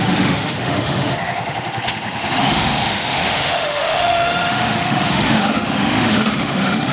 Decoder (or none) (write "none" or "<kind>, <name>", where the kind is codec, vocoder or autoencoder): autoencoder, DAC-VAE